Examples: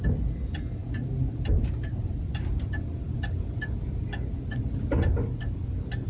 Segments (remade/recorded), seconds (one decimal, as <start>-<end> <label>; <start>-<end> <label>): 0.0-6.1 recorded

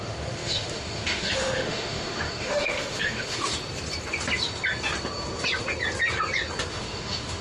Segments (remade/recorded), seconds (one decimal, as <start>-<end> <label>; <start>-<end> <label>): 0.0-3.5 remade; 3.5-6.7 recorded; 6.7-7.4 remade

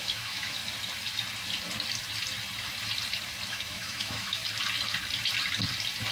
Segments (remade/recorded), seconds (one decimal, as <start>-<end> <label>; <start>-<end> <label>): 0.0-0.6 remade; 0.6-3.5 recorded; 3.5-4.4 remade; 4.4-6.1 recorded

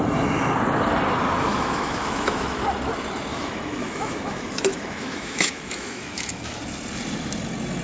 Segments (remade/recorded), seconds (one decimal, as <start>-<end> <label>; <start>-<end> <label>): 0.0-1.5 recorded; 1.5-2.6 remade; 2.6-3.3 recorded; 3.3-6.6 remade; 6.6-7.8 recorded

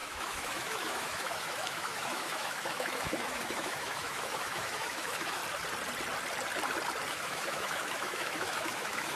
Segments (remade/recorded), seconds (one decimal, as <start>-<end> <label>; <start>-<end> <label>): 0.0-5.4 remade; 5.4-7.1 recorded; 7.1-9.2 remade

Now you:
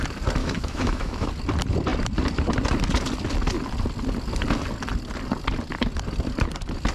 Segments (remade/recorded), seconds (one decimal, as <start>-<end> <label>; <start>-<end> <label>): 0.0-0.4 recorded; 0.4-1.3 remade; 1.3-6.9 recorded